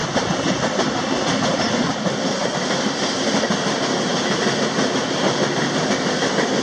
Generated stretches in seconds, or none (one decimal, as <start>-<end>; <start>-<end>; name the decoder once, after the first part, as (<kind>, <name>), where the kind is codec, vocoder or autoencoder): 2.4-4.5 (vocoder, BigVGAN v2)